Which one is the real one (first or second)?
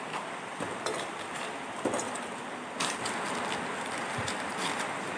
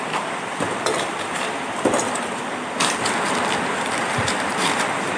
first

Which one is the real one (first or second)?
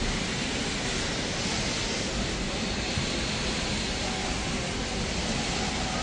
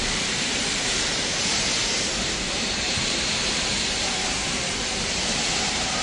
first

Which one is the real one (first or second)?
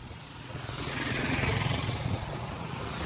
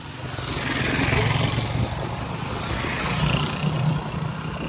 second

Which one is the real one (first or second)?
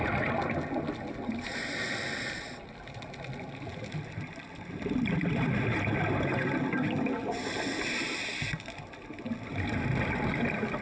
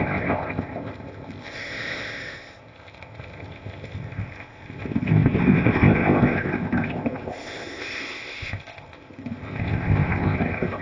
first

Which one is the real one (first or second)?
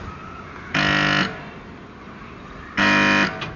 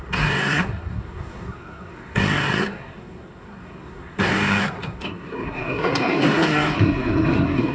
first